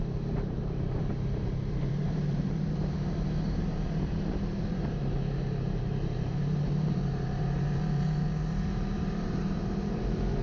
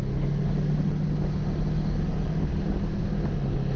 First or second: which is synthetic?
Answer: first